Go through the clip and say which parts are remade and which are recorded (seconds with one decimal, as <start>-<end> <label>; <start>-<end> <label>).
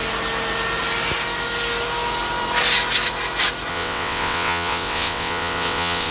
0.0-3.7 recorded; 3.7-6.1 remade